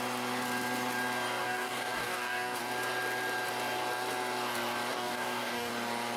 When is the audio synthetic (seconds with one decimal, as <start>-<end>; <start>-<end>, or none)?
1.4-2.6; 4.9-5.7